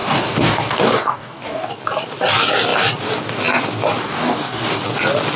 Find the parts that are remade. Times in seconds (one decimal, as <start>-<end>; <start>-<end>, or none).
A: 0.0-1.7; 4.0-4.8